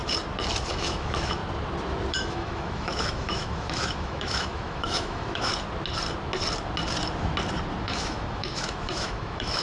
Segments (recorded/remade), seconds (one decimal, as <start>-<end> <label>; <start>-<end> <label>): 0.0-0.7 recorded; 0.7-1.4 remade; 1.4-2.1 recorded; 2.1-5.5 remade; 5.5-7.8 recorded; 7.8-9.6 remade